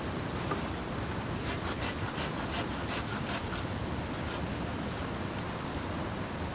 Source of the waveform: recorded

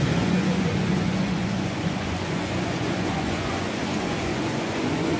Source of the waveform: remade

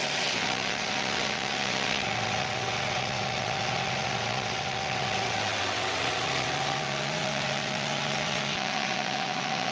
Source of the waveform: remade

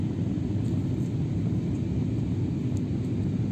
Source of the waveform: recorded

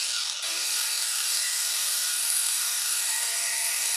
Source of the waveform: remade